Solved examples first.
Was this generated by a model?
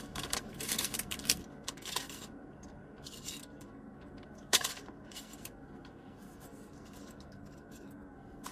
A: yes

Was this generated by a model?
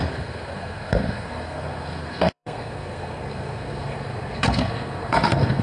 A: yes